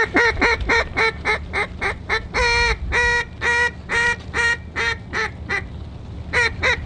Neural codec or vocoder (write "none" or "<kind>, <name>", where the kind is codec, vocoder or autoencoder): none